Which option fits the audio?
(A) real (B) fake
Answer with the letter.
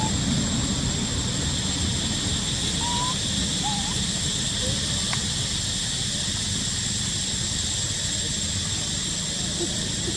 A